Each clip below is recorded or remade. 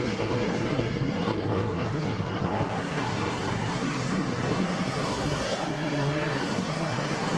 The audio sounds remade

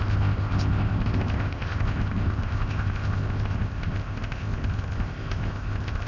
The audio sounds remade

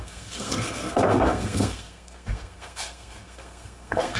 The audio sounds remade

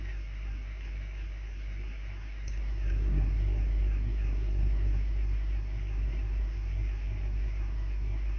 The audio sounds remade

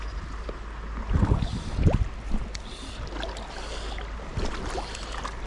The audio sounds recorded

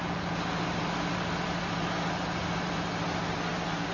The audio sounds recorded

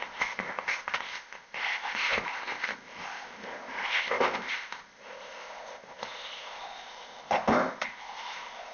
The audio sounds remade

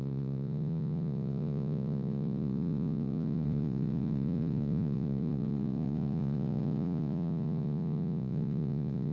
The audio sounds remade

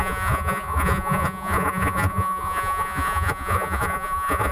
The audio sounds remade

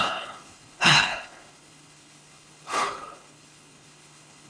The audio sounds remade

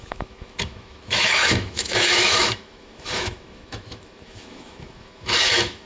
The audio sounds remade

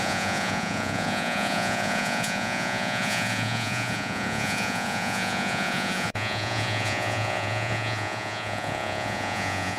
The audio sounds remade